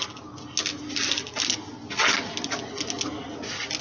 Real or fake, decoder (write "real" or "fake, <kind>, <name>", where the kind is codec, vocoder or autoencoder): real